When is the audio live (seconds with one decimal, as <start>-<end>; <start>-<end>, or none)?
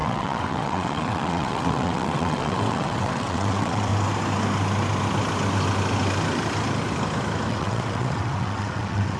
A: 3.9-7.5